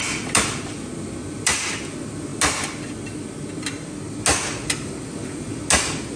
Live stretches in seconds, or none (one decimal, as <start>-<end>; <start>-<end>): 0.0-6.2